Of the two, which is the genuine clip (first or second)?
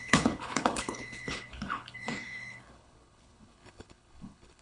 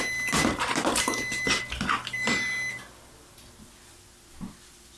second